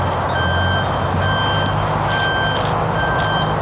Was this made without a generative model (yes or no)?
yes